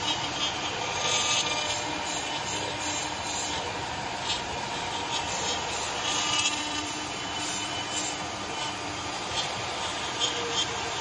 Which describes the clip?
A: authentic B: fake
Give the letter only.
B